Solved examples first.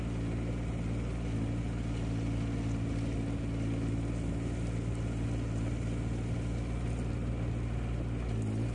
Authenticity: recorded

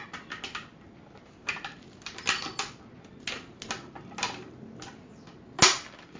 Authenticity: recorded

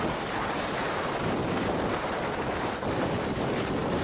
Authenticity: recorded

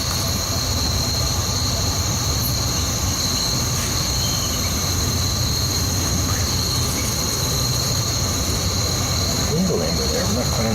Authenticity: recorded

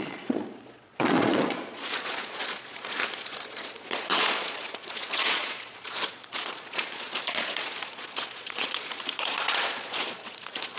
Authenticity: remade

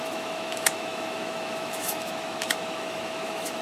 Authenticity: remade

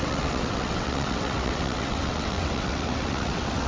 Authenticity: remade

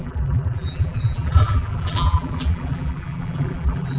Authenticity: remade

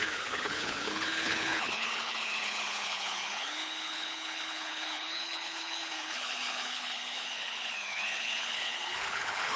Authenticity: remade